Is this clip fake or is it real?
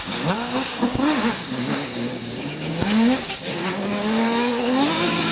fake